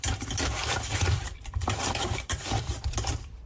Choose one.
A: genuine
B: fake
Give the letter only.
B